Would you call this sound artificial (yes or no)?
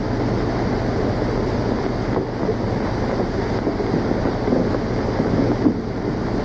no